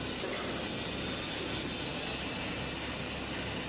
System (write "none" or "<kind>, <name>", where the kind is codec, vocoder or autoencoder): none